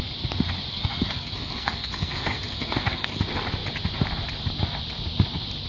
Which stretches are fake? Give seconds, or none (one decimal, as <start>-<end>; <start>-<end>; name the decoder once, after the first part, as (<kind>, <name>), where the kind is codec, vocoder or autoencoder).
0.7-3.2 (codec, SNAC)